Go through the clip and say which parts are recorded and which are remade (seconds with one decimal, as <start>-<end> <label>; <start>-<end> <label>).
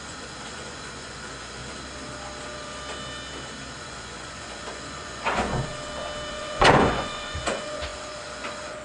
0.0-1.6 remade; 1.6-3.8 recorded; 3.8-5.7 remade; 5.7-6.3 recorded; 6.3-8.8 remade